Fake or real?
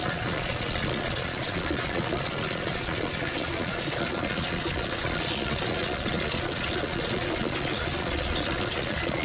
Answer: fake